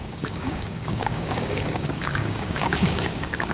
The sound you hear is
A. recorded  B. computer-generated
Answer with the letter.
B